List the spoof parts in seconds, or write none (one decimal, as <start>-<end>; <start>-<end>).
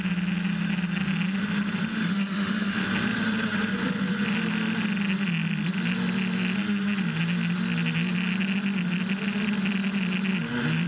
1.9-2.8